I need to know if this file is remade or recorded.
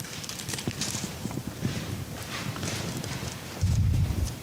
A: remade